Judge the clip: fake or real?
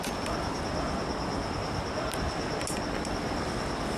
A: real